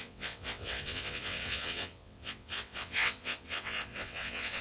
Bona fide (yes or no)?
no